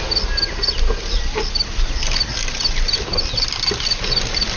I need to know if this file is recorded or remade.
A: recorded